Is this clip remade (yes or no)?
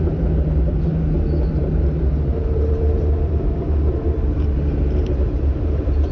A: yes